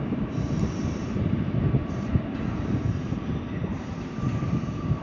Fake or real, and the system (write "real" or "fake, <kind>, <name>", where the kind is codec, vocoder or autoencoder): fake, vocoder, BigVGAN v2